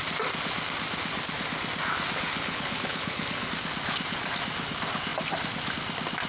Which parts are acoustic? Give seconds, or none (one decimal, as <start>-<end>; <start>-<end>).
0.0-2.3; 3.5-6.3